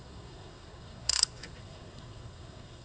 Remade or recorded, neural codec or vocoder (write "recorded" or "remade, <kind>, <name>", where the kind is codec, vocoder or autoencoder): remade, codec, SNAC